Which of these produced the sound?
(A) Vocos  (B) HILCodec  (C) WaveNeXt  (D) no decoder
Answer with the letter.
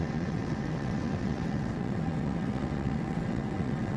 C